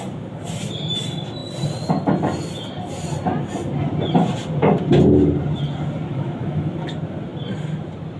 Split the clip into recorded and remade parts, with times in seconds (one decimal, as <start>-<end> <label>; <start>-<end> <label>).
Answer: 0.0-6.1 recorded; 6.1-6.7 remade; 6.7-8.2 recorded